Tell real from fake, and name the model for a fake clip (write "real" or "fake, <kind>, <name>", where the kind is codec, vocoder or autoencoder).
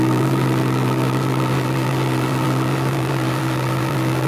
fake, vocoder, BigVGAN v2